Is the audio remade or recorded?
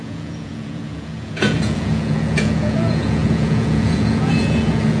remade